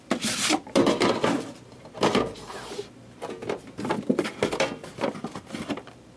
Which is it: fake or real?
real